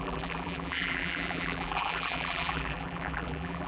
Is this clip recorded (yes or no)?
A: no